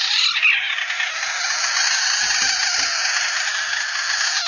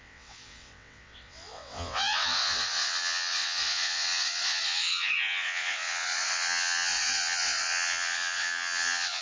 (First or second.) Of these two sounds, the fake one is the second